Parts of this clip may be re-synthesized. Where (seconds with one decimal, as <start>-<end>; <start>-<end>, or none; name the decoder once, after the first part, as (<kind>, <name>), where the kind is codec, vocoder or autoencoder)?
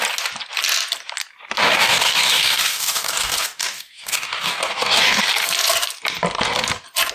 1.6-5.2 (codec, DAC)